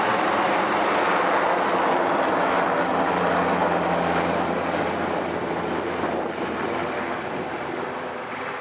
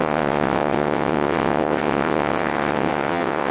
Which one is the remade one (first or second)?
second